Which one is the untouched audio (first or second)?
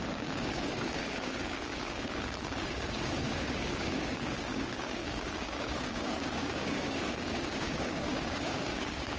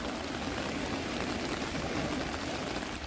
second